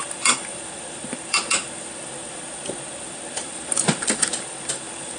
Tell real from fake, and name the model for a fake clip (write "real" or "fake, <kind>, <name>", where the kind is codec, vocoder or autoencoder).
fake, vocoder, BigVGAN v2